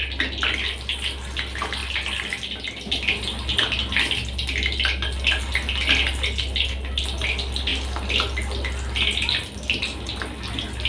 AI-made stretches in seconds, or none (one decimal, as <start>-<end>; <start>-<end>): none